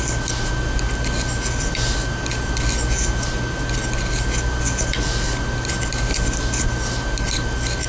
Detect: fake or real real